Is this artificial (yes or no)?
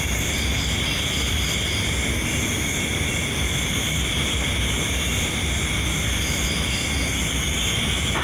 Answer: no